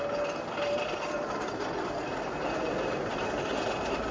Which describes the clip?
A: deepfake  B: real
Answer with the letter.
B